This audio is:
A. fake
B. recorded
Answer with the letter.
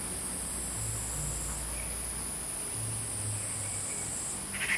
B